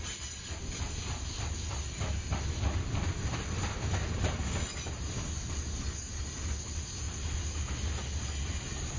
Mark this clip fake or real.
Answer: real